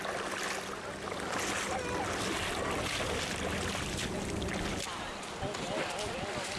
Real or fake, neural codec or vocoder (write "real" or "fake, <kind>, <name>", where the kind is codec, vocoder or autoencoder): real